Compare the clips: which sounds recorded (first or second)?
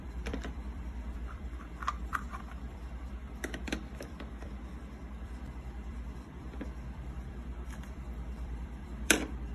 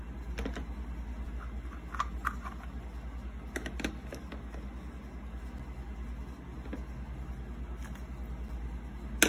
second